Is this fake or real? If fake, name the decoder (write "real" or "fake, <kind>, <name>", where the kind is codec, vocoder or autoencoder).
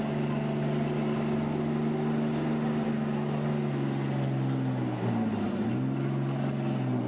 real